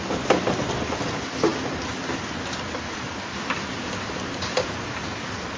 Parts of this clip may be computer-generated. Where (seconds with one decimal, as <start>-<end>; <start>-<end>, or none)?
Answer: none